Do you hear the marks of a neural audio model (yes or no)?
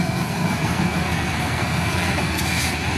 yes